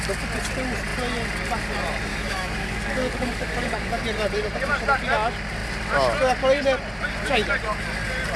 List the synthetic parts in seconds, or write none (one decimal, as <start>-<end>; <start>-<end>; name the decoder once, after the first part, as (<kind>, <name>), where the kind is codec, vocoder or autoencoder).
2.1-4.0 (codec, DAC)